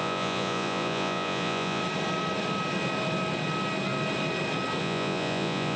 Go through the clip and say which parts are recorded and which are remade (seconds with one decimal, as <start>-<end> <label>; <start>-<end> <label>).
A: 0.0-1.8 remade; 1.8-4.8 recorded; 4.8-5.8 remade